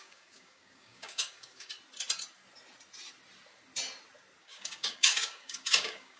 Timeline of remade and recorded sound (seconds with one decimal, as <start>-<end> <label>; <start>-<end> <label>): 0.0-1.7 remade; 1.7-4.4 recorded; 4.4-6.2 remade